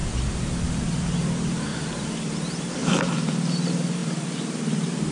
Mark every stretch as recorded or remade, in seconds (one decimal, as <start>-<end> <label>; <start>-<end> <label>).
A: 0.0-1.7 recorded; 1.7-2.7 remade; 2.7-4.0 recorded; 4.0-4.6 remade; 4.6-5.1 recorded